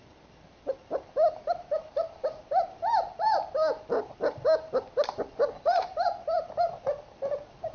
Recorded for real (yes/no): yes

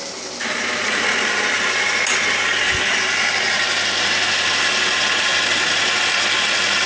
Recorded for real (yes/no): yes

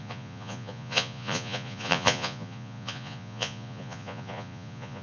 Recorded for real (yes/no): no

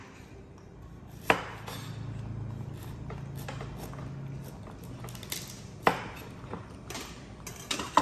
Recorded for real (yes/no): yes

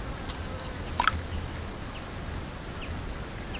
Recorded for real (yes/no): yes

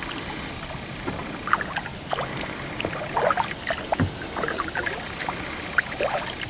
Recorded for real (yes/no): yes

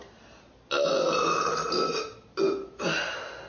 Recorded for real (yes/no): yes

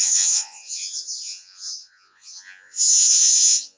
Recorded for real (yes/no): no